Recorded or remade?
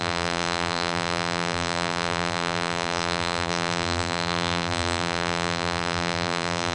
remade